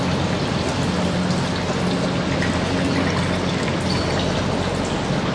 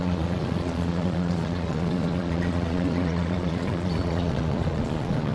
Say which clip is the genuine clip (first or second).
first